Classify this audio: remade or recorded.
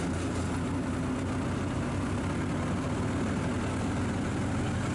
recorded